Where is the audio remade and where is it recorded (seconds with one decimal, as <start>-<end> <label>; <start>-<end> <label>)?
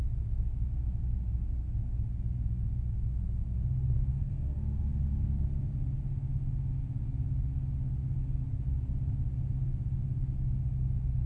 0.0-4.1 recorded; 4.1-4.9 remade; 4.9-11.3 recorded